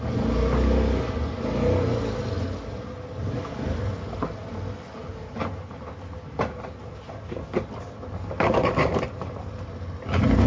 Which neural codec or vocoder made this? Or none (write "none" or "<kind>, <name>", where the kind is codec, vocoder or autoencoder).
none